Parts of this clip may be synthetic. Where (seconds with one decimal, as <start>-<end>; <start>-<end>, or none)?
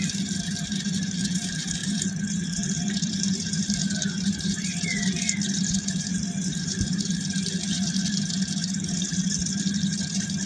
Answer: 0.0-10.5